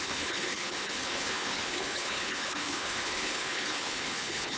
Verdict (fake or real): fake